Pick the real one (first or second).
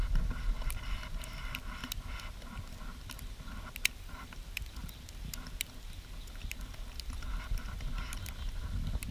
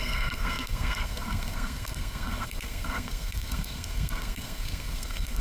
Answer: first